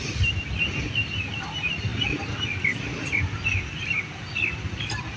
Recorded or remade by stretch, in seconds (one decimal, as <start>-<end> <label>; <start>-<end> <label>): 0.0-5.2 recorded